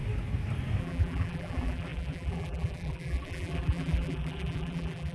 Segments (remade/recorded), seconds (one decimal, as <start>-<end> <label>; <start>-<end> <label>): 0.0-0.8 recorded; 0.8-5.1 remade